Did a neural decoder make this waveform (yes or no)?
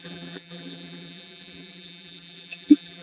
yes